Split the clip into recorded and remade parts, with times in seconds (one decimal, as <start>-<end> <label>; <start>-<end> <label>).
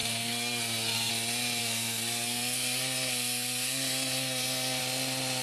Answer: 0.0-1.1 remade; 1.1-1.6 recorded; 1.6-4.8 remade; 4.8-5.4 recorded